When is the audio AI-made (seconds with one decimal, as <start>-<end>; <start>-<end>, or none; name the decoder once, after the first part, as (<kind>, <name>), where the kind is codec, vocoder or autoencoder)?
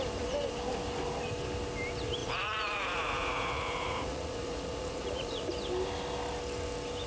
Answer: 2.2-5.5 (vocoder, Vocos)